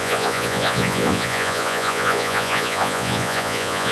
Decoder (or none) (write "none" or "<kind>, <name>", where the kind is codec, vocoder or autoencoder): vocoder, Vocos